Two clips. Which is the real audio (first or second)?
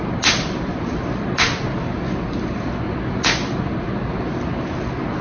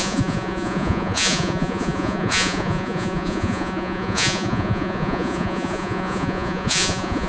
first